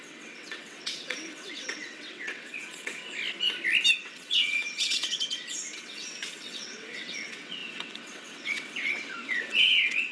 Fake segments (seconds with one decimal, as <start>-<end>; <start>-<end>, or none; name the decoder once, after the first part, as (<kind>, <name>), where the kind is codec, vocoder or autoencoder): 0.0-3.0 (vocoder, WaveNeXt); 4.0-10.1